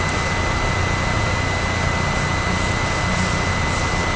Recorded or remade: recorded